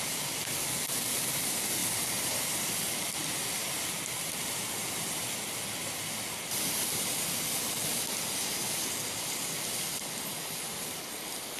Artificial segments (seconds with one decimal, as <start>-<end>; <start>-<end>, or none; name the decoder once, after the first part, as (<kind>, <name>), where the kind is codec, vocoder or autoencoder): none